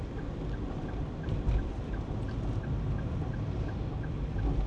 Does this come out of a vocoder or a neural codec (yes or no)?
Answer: no